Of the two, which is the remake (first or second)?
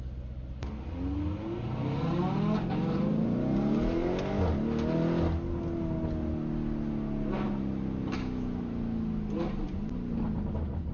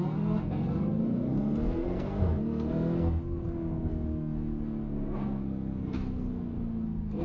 second